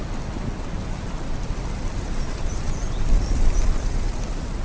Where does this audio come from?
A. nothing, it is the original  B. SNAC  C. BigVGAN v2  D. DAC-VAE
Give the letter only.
C